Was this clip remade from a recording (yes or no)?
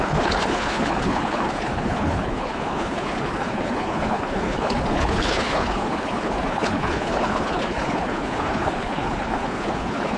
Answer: yes